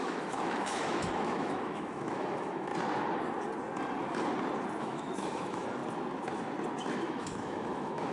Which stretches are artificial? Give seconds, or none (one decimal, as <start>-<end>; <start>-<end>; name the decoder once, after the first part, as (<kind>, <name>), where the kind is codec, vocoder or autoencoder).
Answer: 0.0-2.7 (autoencoder, DAC-VAE); 4.8-5.8; 7.0-8.1